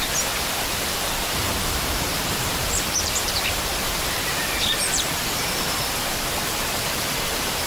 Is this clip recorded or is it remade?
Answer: remade